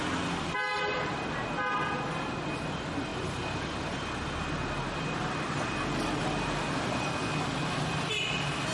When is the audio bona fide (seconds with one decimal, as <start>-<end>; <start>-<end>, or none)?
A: 0.0-8.7